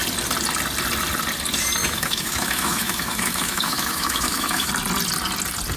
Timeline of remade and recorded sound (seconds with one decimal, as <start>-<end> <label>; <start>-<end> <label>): 0.0-1.8 recorded; 1.8-4.7 remade; 4.7-5.8 recorded